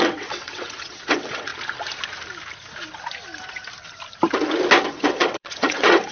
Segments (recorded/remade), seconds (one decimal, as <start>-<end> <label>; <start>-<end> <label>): 0.0-1.5 remade; 1.5-4.9 recorded; 4.9-6.1 remade